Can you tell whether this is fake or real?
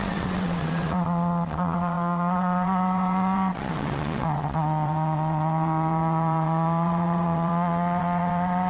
fake